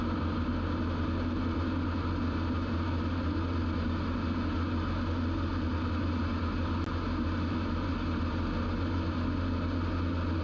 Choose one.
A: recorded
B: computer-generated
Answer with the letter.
A